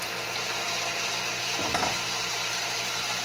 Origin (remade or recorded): recorded